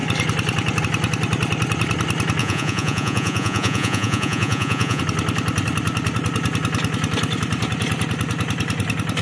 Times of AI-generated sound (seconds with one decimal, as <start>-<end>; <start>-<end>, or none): 2.4-5.0